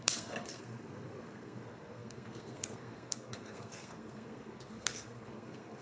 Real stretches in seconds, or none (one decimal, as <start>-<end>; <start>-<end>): none